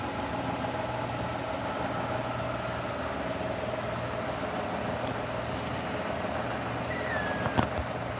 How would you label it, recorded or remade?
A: recorded